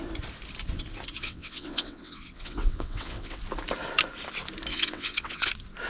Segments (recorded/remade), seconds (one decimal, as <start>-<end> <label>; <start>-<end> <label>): 0.0-1.2 recorded; 1.2-3.4 remade; 3.4-4.7 recorded; 4.7-5.5 remade; 5.5-5.9 recorded